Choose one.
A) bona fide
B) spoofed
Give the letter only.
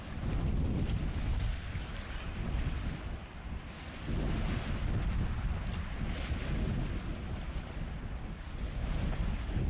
A